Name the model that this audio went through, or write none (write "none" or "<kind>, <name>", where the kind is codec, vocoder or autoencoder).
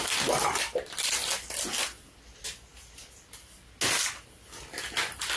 none